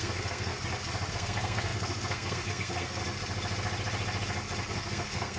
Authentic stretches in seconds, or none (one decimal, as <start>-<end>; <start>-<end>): 0.5-1.1; 3.0-4.7